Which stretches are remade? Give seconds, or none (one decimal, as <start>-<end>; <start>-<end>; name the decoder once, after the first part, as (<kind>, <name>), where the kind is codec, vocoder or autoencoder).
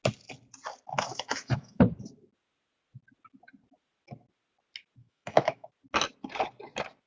0.9-1.8 (autoencoder, DAC-VAE); 5.0-5.7